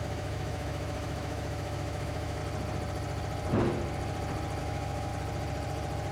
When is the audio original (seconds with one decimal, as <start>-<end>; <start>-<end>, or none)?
2.4-4.6; 5.1-6.1